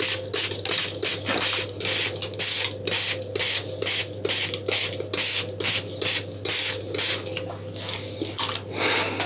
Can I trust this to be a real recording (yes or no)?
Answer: yes